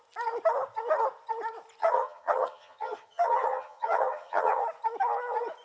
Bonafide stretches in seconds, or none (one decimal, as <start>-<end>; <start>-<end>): 0.0-1.8; 4.6-5.6